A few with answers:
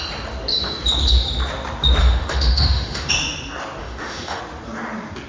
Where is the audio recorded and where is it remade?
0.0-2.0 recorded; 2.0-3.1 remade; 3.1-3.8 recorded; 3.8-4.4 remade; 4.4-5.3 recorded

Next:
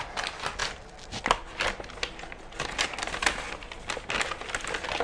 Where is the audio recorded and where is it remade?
0.0-5.0 recorded

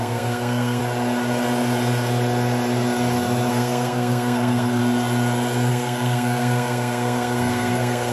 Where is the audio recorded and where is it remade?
0.0-0.8 remade; 0.8-3.5 recorded; 3.5-4.8 remade; 4.8-5.7 recorded; 5.7-8.1 remade

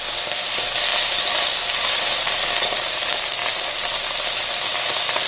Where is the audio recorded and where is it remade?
0.0-5.3 recorded

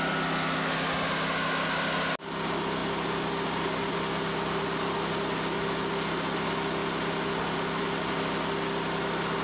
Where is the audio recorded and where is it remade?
0.0-9.4 recorded

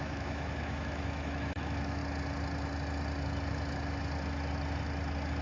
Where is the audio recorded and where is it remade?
0.0-2.0 remade; 2.0-5.4 recorded

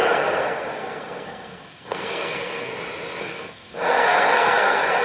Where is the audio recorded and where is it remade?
0.0-2.7 remade; 2.7-3.2 recorded; 3.2-5.0 remade